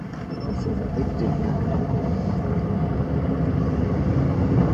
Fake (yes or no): no